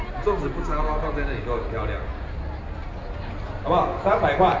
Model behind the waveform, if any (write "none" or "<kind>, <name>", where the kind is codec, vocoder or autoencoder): none